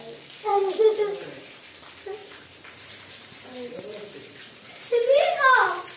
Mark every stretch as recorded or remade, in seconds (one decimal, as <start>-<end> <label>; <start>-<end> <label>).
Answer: 0.0-0.6 recorded; 0.6-1.8 remade; 1.8-2.2 recorded; 2.2-6.0 remade